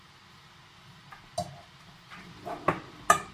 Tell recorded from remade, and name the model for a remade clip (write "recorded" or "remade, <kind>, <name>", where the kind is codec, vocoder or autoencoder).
recorded